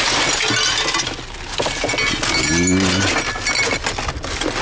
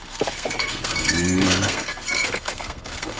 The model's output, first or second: second